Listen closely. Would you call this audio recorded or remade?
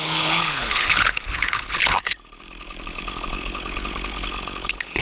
remade